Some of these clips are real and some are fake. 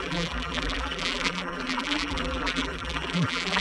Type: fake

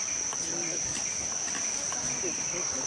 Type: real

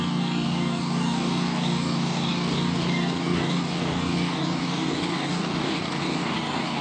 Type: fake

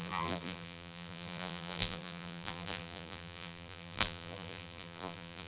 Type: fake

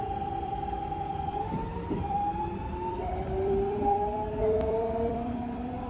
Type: fake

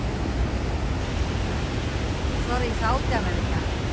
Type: real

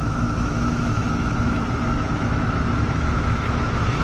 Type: fake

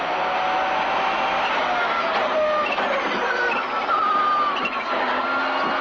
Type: real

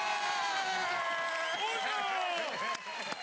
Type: real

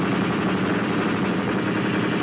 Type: real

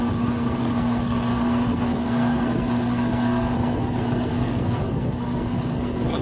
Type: fake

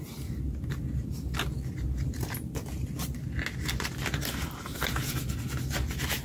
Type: real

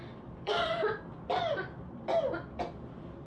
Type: fake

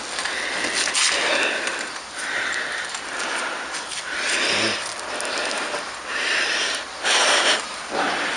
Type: real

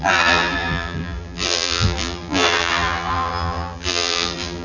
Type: fake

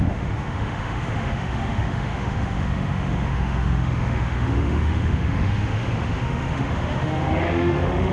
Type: fake